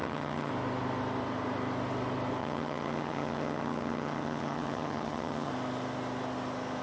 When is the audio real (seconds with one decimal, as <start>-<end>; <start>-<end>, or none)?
0.5-2.4; 5.5-6.8